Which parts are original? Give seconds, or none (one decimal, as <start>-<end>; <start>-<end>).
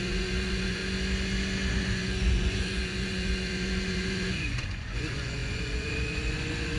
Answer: 0.8-1.7